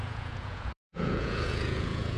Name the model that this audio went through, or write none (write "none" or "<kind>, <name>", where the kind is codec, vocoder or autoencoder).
vocoder, Vocos